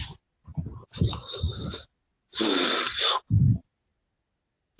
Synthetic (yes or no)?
no